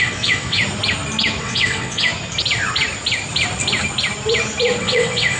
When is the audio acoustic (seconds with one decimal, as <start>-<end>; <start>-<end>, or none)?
0.6-1.4; 2.1-4.8